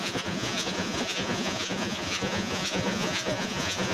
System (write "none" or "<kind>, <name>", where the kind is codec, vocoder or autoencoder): vocoder, Vocos